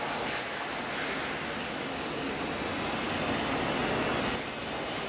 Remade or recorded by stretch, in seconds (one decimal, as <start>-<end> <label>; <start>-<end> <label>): 0.0-1.6 recorded; 1.6-2.3 remade; 2.3-5.1 recorded